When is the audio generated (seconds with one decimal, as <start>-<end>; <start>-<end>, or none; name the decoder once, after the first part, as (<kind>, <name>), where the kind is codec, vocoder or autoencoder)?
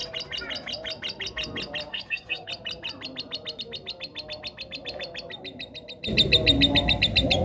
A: 1.9-2.5 (codec, SNAC)